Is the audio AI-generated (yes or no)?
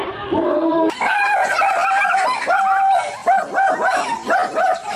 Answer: yes